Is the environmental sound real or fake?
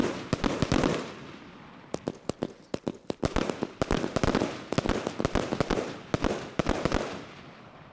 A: real